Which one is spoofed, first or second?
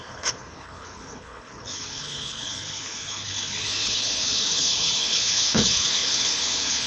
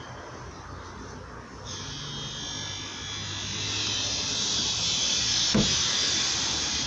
first